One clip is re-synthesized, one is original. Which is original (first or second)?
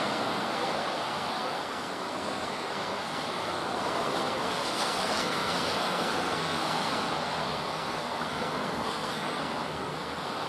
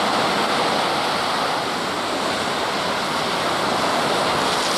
second